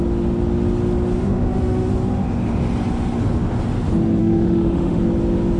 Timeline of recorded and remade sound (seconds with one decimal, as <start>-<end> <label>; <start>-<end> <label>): 0.0-1.2 recorded; 1.2-1.9 remade; 1.9-4.2 recorded; 4.2-5.0 remade; 5.0-5.6 recorded